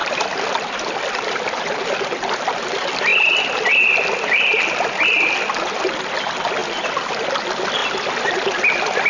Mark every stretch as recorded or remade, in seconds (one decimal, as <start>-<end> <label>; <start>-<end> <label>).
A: 0.0-1.4 remade; 1.4-3.1 recorded; 3.1-5.0 remade; 5.0-7.8 recorded; 7.8-9.1 remade